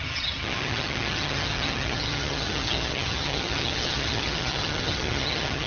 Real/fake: fake